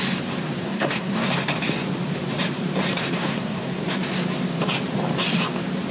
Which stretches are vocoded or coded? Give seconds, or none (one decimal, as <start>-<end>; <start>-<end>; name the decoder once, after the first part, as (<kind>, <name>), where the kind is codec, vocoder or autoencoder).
0.6-1.3 (codec, SNAC); 3.0-3.8